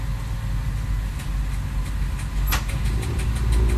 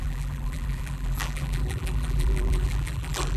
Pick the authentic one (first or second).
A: first